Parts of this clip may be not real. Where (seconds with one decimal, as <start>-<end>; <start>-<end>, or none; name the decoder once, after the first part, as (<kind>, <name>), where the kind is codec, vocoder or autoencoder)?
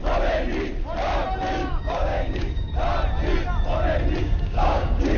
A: 1.6-2.7 (codec, DAC); 4.2-5.2